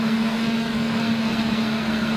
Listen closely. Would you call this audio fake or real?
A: fake